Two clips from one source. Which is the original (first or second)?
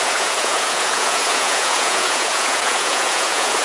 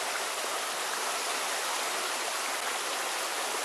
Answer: second